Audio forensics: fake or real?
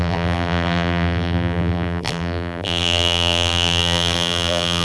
fake